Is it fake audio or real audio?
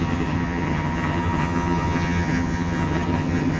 fake